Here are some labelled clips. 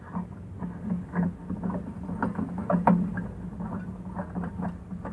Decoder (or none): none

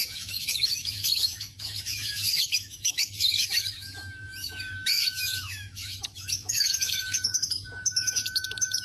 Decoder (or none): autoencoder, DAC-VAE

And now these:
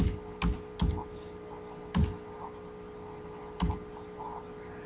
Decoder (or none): none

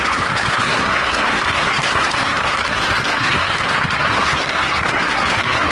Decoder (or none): codec, SNAC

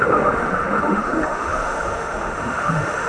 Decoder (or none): autoencoder, DAC-VAE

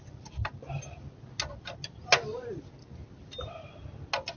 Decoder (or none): none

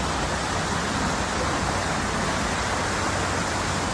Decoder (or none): none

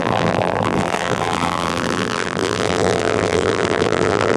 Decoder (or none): vocoder, BigVGAN v2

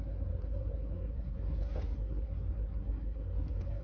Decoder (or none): codec, SNAC